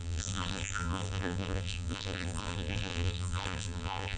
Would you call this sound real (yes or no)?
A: no